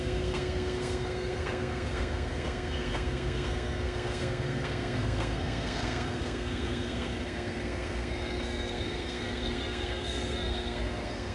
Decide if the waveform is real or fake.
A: fake